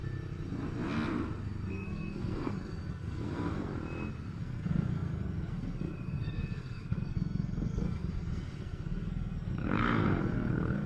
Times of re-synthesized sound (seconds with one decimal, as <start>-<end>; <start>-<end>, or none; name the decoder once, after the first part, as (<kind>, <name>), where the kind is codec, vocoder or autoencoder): 1.7-3.7 (codec, SNAC); 4.4-10.9